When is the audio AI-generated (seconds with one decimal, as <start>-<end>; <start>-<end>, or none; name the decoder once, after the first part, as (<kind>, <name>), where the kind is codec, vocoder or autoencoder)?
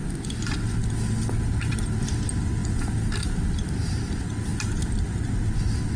none